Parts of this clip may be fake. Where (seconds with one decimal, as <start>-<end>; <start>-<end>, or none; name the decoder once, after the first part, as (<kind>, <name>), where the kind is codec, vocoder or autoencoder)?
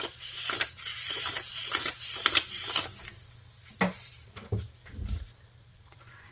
5.7-6.3 (vocoder, Vocos)